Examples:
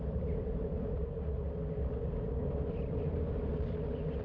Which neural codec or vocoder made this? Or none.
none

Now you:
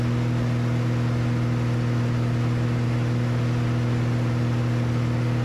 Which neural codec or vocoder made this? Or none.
none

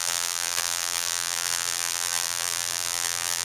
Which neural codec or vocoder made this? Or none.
vocoder, BigVGAN v2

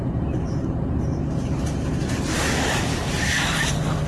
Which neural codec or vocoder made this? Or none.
vocoder, BigVGAN v2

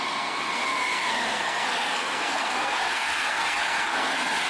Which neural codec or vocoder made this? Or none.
codec, SNAC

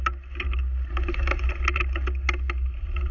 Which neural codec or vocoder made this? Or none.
none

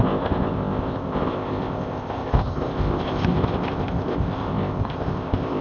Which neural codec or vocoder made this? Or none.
codec, ZipCodec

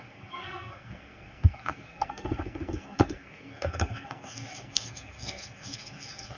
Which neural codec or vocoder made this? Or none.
codec, SNAC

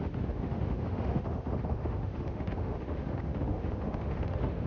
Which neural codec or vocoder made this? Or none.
autoencoder, DAC-VAE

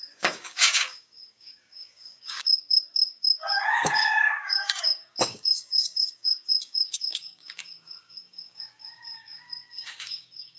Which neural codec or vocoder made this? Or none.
codec, DAC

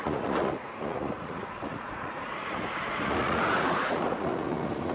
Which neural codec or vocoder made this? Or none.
vocoder, Vocos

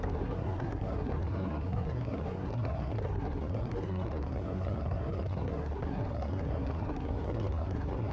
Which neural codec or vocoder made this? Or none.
codec, SNAC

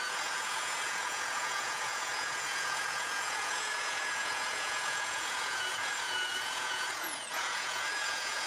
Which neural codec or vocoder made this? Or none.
vocoder, Vocos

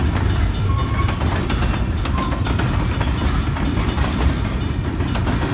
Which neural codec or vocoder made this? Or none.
none